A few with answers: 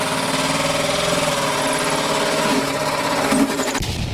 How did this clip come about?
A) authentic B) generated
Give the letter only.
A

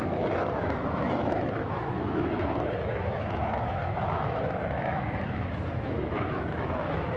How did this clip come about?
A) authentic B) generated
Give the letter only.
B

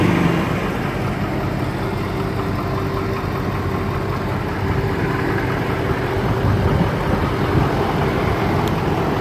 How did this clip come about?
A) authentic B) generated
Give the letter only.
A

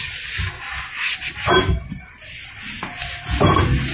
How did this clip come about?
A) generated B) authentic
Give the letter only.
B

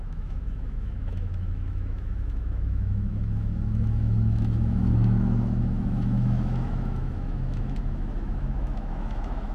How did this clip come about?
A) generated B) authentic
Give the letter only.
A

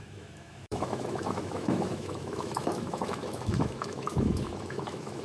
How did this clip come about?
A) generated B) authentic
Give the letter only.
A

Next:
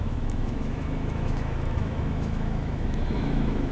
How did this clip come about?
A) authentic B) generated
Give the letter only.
B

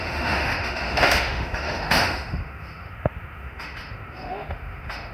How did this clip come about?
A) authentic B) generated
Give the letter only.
B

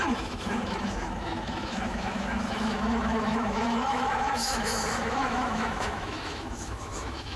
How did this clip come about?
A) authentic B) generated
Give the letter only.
B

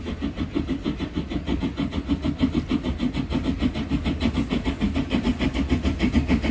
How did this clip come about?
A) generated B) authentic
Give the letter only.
B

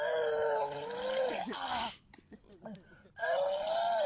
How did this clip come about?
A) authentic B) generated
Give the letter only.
A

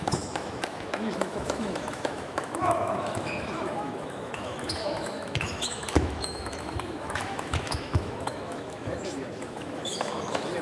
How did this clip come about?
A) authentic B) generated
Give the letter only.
B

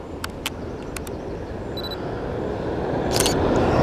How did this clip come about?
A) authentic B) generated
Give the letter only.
A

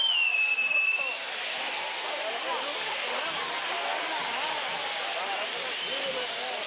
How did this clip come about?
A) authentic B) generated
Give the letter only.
A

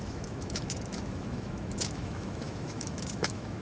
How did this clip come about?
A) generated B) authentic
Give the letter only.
A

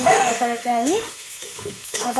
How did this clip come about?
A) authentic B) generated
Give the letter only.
B